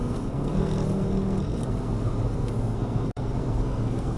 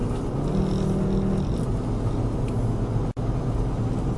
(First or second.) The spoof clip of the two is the first